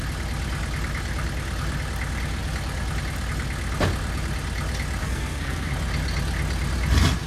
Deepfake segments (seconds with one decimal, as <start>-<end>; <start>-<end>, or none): 5.0-5.7